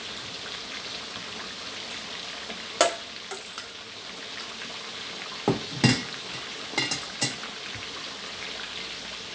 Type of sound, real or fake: real